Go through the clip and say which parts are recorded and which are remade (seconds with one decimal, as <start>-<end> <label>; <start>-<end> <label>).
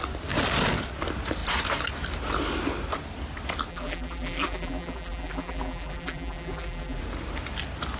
0.0-3.7 recorded; 3.7-7.0 remade; 7.0-8.0 recorded